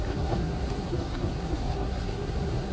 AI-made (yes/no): yes